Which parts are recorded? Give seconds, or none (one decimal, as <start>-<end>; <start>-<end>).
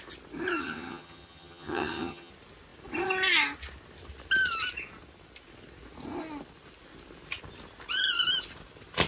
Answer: 0.0-0.6; 2.3-9.1